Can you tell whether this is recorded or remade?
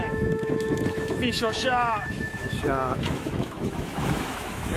remade